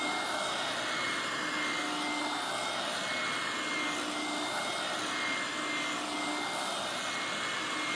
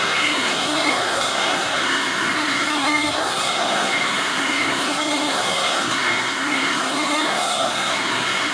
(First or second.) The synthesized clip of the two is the second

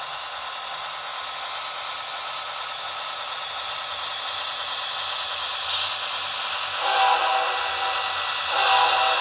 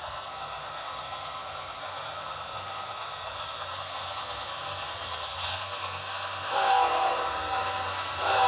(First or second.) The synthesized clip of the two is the second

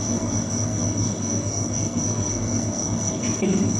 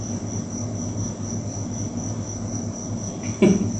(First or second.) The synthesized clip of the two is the first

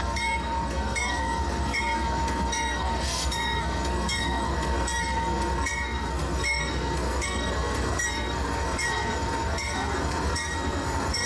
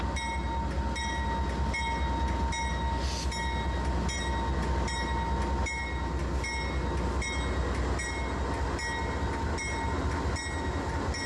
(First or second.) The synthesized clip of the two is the first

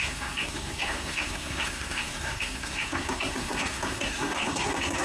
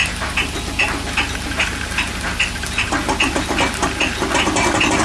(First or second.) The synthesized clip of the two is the first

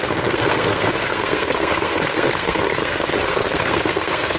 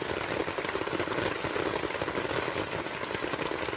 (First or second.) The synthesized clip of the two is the first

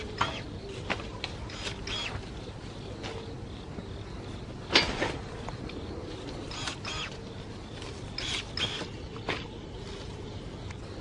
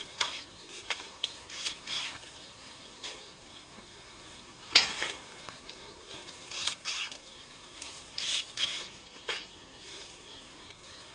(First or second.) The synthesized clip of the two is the second